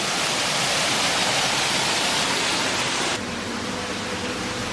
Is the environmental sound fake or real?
real